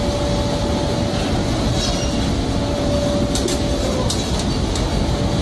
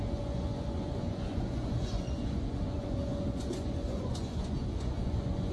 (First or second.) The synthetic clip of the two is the second